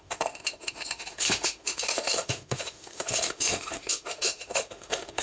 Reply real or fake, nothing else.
fake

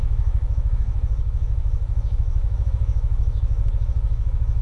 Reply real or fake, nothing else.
fake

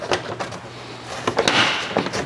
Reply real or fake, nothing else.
real